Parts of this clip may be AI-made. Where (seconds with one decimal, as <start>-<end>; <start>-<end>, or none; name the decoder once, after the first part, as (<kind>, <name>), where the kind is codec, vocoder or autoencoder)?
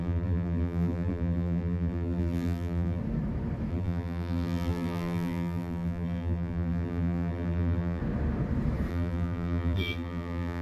0.0-3.0 (vocoder, BigVGAN v2); 3.7-8.0; 8.9-10.6